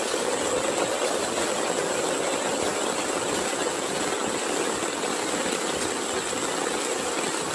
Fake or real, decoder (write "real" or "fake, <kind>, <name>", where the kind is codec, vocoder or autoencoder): real